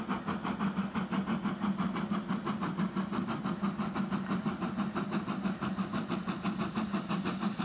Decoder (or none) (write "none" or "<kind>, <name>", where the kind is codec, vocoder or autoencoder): none